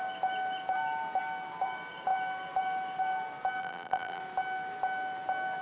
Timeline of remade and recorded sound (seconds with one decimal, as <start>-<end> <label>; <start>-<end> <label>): 0.0-3.6 recorded; 3.6-4.2 remade; 4.2-5.6 recorded